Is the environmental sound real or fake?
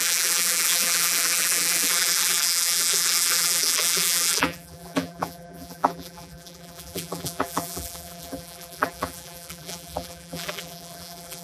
fake